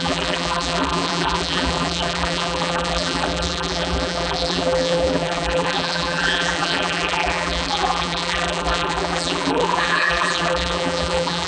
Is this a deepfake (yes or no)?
yes